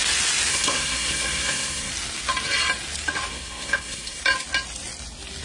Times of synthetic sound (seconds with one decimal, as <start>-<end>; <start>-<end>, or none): 0.5-1.9; 3.3-4.2